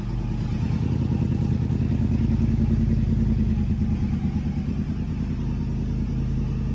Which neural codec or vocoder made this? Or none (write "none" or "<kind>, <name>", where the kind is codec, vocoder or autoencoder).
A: none